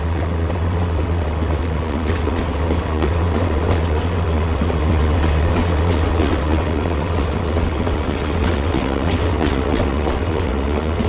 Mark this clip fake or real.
fake